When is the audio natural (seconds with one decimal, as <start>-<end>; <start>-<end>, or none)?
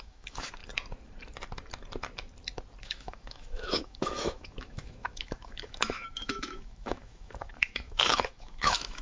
0.6-2.8